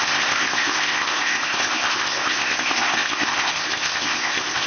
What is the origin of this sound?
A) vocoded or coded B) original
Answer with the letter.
A